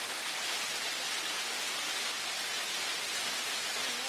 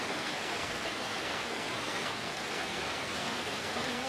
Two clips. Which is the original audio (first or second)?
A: first